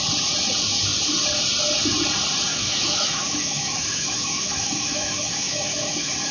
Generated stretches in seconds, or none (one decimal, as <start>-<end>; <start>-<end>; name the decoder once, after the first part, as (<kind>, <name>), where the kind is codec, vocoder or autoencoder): 2.5-6.3 (autoencoder, DAC-VAE)